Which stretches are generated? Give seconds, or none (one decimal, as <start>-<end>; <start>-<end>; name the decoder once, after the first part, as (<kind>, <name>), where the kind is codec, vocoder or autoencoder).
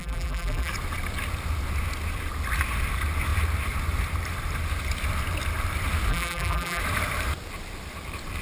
0.0-0.7 (vocoder, BigVGAN v2); 6.1-6.8